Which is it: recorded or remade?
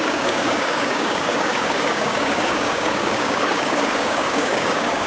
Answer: remade